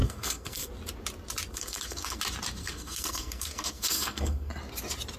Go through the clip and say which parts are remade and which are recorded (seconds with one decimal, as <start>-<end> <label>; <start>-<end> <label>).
0.0-0.7 remade; 0.7-1.5 recorded; 1.5-2.2 remade; 2.2-2.6 recorded; 2.6-4.5 remade; 4.5-5.2 recorded